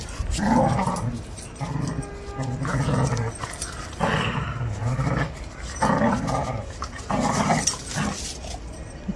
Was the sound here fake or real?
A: real